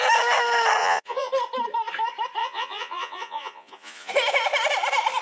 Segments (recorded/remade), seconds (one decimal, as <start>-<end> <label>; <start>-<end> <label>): 0.0-0.8 recorded; 0.8-1.3 remade; 1.3-2.4 recorded; 2.4-4.1 remade; 4.1-5.2 recorded

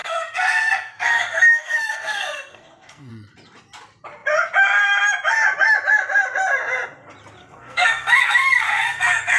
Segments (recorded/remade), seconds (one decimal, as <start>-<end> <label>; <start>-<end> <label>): 0.0-3.1 remade; 3.1-7.4 recorded; 7.4-9.4 remade